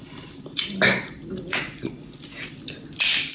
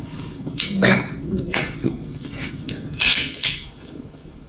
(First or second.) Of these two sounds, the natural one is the first